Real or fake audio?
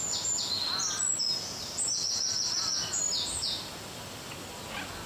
real